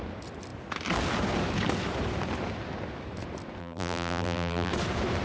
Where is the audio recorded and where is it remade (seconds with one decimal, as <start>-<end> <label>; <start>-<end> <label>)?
0.0-3.6 recorded; 3.6-4.7 remade; 4.7-5.2 recorded